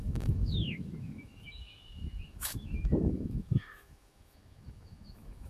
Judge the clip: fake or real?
fake